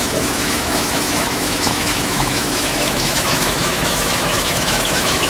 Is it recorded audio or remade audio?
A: remade